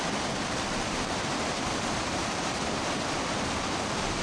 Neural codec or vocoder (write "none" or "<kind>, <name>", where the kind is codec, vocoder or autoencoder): vocoder, BigVGAN v2